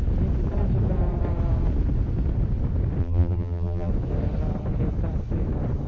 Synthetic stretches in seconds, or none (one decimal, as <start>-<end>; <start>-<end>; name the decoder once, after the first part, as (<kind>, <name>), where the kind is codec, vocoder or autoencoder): 3.0-3.9 (vocoder, BigVGAN v2)